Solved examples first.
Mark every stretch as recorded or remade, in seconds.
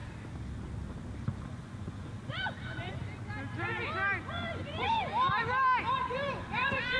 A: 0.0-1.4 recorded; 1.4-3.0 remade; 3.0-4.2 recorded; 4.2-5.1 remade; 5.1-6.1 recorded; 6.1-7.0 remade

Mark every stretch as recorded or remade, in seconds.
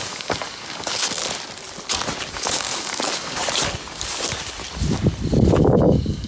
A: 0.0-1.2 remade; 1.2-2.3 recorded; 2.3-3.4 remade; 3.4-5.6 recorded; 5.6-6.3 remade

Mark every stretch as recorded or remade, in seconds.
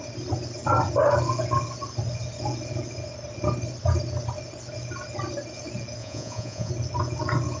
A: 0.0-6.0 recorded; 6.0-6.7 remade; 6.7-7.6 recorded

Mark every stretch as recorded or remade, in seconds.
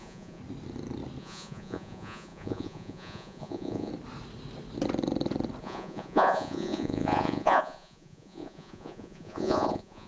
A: 0.0-0.4 remade; 0.4-1.2 recorded; 1.2-3.9 remade; 3.9-5.6 recorded; 5.6-10.1 remade